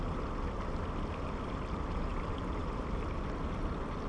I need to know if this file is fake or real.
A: real